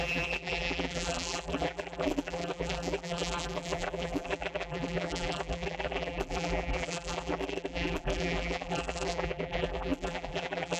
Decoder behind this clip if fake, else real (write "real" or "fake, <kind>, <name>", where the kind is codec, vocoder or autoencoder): fake, vocoder, BigVGAN v2